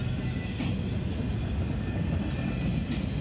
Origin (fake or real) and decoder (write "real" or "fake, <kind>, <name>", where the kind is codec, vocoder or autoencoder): real